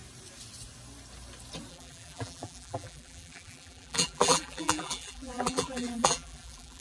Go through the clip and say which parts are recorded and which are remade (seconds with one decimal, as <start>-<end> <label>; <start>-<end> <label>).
0.0-1.7 recorded; 1.7-6.8 remade